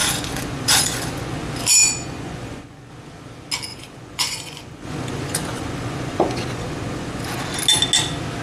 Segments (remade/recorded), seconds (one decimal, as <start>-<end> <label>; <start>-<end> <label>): 0.0-1.4 remade; 1.4-1.8 recorded; 1.8-2.9 remade; 2.9-3.7 recorded; 3.7-7.4 remade; 7.4-8.4 recorded